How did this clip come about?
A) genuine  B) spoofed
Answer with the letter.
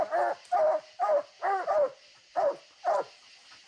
A